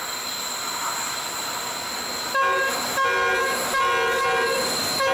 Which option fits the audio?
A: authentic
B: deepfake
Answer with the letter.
A